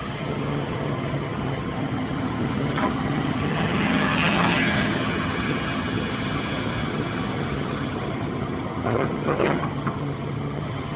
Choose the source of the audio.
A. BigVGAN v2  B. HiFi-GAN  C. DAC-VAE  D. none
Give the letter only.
B